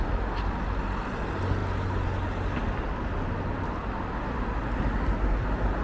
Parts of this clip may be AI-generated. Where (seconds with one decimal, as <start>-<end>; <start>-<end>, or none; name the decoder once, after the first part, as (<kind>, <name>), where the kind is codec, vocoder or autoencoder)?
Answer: none